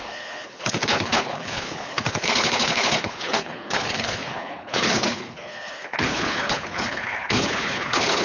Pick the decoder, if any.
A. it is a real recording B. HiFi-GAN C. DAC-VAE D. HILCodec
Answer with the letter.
D